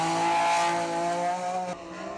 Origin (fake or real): real